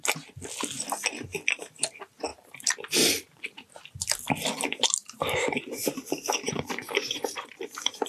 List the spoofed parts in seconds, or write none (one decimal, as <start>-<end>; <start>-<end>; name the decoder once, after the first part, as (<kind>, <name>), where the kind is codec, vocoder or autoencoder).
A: 2.3-3.8 (vocoder, BigVGAN v2); 5.0-8.1